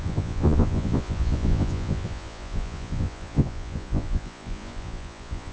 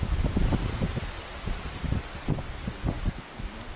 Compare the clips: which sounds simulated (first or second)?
first